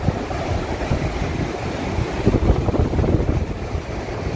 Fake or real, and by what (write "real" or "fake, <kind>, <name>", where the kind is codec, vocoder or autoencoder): real